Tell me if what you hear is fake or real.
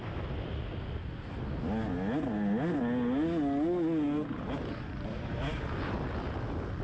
real